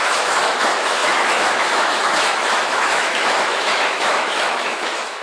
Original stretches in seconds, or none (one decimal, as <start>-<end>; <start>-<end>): none